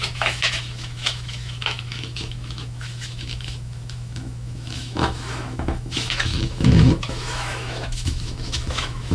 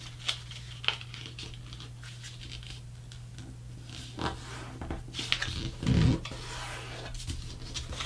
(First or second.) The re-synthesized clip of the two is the first